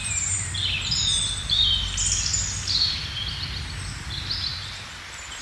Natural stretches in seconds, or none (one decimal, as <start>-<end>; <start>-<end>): 0.0-5.4